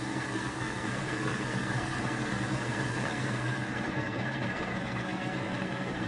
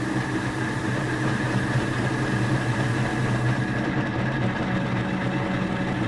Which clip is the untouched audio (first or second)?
second